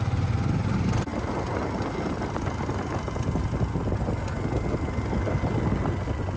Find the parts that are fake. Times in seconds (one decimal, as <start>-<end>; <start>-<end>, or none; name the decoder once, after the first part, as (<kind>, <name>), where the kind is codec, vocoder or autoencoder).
none